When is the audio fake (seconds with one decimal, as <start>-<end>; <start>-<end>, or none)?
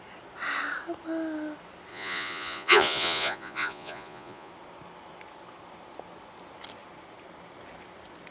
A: 1.9-4.5